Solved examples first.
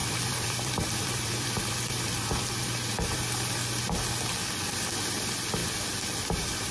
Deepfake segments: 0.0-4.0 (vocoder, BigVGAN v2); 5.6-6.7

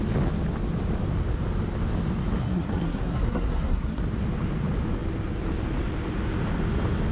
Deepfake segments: 2.4-4.0 (codec, SNAC)

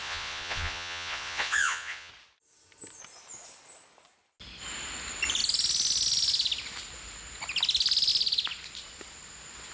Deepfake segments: 0.0-2.1 (vocoder, Vocos)

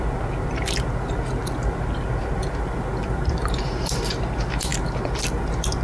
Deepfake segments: none

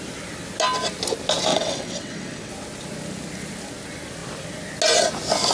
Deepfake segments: 1.5-2.5 (vocoder, WaveNeXt)

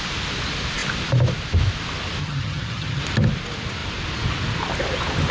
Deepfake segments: 2.2-3.0 (vocoder, HiFi-GAN)

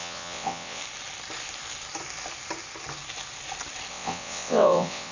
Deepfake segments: 0.0-0.8 (vocoder, WaveNeXt); 3.9-5.1